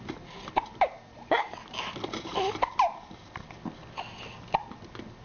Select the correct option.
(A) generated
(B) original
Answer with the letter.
B